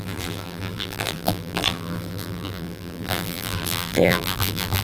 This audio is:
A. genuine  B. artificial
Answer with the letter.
B